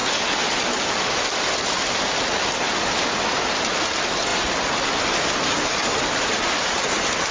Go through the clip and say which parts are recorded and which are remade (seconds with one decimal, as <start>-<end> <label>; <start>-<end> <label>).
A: 0.0-7.3 recorded